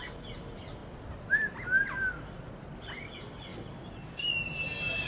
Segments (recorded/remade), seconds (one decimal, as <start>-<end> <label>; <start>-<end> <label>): 0.0-5.1 recorded